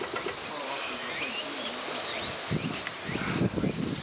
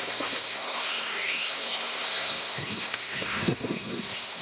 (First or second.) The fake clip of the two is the second